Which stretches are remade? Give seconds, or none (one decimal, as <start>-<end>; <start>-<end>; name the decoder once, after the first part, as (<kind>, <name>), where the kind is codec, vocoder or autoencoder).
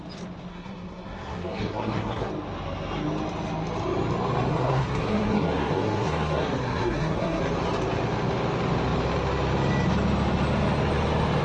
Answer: 0.5-2.3 (codec, SNAC); 4.5-7.4